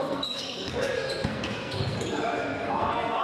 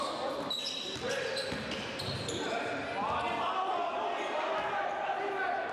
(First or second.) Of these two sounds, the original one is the second